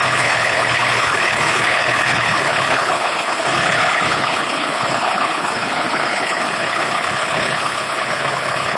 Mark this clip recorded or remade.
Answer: remade